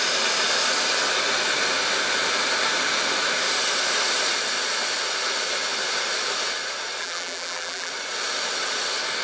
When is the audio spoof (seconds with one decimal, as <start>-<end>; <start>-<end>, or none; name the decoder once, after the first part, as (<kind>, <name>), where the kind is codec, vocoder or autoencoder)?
7.0-7.9 (vocoder, BigVGAN v2)

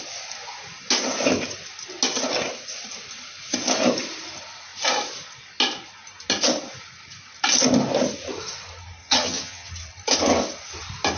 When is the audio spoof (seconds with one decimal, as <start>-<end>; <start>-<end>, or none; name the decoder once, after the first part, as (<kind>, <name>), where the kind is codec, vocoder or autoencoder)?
9.0-9.7 (vocoder, HiFi-GAN)

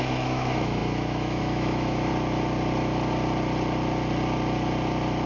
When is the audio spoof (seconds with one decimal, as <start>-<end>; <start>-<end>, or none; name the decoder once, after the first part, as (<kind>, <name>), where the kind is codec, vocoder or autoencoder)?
0.0-2.1 (autoencoder, DAC-VAE)

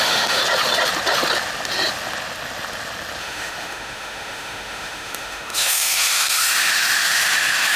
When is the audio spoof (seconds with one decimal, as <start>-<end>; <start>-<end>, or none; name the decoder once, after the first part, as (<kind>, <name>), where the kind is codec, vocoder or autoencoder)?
0.0-0.4 (autoencoder, DAC-VAE); 3.2-7.8

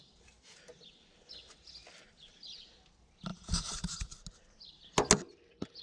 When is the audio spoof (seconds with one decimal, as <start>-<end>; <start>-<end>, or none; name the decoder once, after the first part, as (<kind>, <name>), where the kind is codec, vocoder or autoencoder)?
none

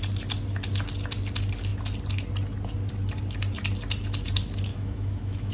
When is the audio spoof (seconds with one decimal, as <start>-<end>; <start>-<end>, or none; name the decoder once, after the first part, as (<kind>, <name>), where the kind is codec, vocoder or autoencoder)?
4.7-5.5 (autoencoder, DAC-VAE)

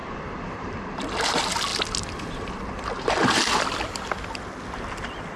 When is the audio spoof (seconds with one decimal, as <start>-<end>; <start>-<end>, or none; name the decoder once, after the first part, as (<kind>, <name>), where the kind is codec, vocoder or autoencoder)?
0.0-0.8 (vocoder, BigVGAN v2)